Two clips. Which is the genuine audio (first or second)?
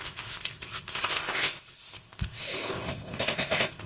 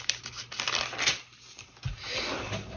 second